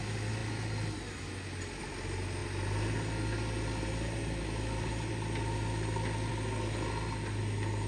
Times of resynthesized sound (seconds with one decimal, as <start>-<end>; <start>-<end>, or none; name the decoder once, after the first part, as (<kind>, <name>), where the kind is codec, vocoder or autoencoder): none

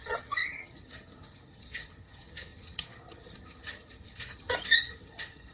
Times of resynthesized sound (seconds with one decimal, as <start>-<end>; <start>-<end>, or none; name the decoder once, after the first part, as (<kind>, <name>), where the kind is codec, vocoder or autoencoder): 0.0-5.5 (vocoder, HiFi-GAN)

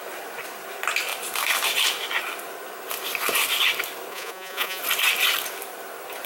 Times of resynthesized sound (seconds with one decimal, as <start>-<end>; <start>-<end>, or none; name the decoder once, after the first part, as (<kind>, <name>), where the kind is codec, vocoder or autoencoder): 4.1-4.8 (vocoder, Vocos)

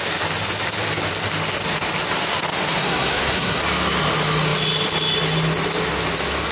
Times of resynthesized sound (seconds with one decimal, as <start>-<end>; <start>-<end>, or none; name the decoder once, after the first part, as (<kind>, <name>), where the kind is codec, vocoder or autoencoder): 2.8-3.6 (codec, SNAC)

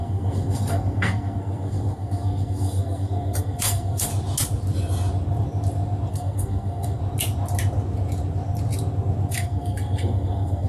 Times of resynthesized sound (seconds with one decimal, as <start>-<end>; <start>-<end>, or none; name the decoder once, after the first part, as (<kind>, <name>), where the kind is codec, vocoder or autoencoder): 0.0-4.1 (codec, SNAC); 6.1-7.0; 9.3-10.7

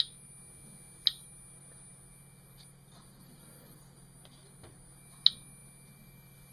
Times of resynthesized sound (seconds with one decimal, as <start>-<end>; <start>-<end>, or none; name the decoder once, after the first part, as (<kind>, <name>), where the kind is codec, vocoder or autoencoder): none